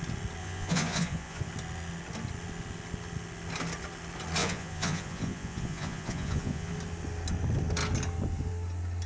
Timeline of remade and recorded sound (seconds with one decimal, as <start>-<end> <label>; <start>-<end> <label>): 0.0-0.4 recorded; 0.4-1.5 remade; 1.5-4.4 recorded; 4.4-6.7 remade; 6.7-9.1 recorded